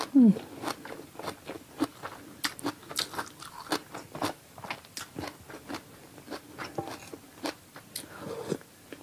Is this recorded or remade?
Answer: recorded